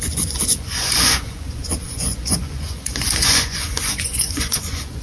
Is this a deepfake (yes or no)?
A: yes